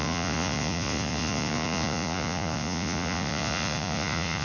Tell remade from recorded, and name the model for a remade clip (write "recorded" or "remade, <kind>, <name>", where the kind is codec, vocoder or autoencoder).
remade, vocoder, Vocos